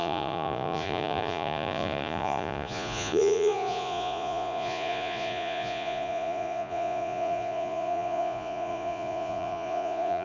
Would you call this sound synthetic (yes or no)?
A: yes